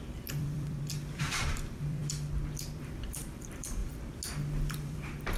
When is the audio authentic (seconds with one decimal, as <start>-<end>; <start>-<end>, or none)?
2.0-2.6; 3.8-4.7